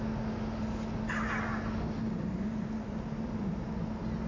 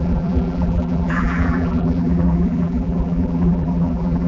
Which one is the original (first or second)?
first